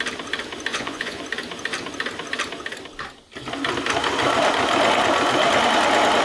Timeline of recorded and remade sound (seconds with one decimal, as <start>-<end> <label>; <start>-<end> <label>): 0.0-0.7 recorded; 0.7-1.2 remade; 1.2-6.2 recorded